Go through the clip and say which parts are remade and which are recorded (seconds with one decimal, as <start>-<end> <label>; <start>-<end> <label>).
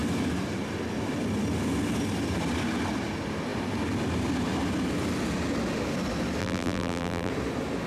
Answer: 0.0-6.4 recorded; 6.4-7.3 remade; 7.3-7.9 recorded